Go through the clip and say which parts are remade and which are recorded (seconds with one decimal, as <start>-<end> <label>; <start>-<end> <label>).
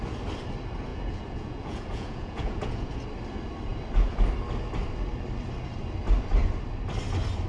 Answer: 0.0-0.9 recorded; 0.9-2.9 remade; 2.9-7.5 recorded